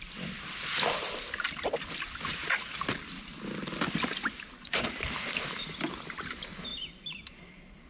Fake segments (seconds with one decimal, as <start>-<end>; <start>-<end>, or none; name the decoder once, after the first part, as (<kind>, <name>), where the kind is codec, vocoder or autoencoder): none